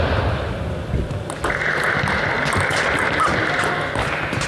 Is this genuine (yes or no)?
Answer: yes